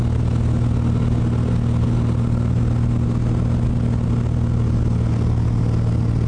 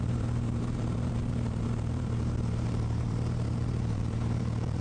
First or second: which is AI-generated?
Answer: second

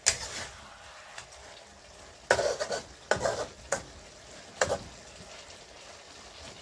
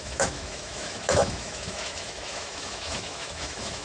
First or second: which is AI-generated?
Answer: second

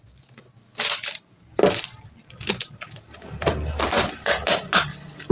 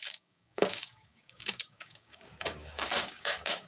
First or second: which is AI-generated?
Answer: second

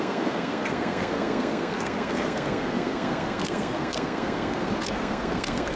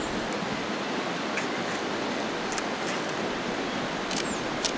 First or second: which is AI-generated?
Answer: first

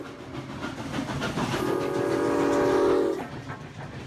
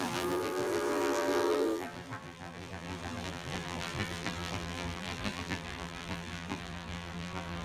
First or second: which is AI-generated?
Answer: second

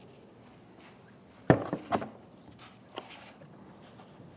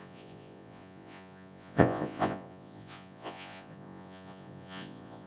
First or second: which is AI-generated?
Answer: second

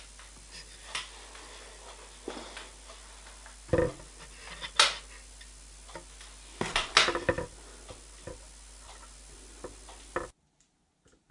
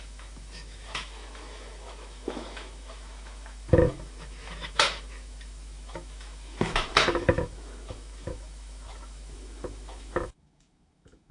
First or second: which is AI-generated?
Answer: second